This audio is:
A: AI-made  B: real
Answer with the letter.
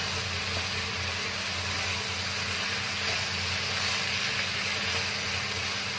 B